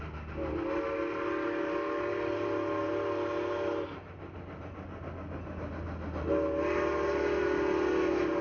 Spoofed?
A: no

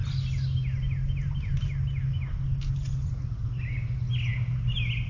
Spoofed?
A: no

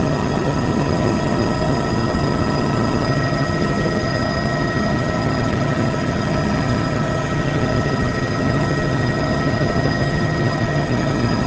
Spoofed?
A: yes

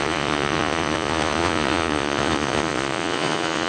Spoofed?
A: yes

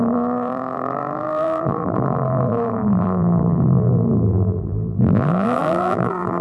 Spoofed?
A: yes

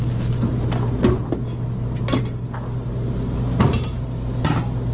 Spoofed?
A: no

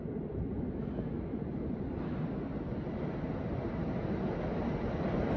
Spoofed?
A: no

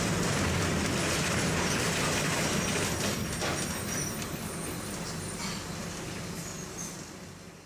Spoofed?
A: no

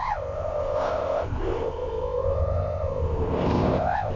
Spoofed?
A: yes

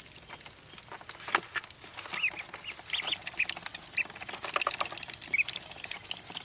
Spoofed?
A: no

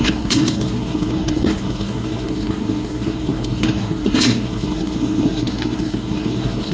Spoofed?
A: yes